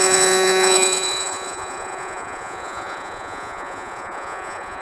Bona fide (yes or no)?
no